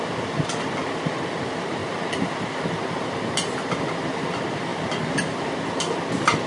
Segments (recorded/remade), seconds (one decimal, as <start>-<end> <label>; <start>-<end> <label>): 0.0-1.8 remade; 1.8-4.3 recorded; 4.3-6.5 remade